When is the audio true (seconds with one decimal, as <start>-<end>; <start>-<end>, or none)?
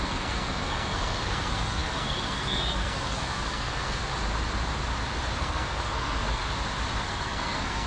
4.0-5.4; 6.4-7.0